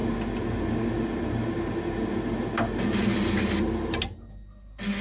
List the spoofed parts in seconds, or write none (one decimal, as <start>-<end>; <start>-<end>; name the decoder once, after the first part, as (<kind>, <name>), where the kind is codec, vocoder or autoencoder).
none